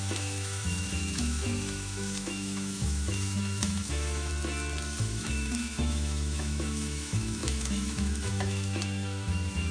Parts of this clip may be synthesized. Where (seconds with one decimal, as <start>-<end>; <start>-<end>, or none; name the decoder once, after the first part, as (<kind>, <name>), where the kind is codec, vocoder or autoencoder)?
0.0-4.3 (autoencoder, DAC-VAE); 5.0-9.7